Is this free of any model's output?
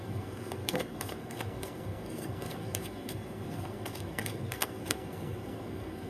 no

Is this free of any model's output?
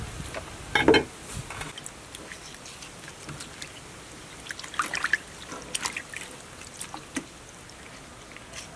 yes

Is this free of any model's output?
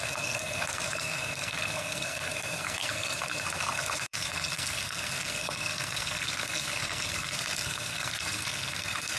no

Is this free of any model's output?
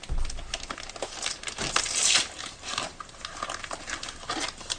yes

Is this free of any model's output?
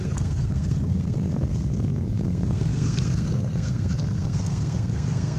no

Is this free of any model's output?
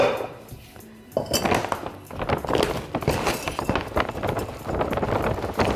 yes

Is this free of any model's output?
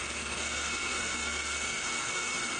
no